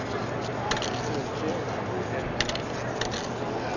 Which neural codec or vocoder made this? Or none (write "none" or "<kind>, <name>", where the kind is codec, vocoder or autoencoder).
none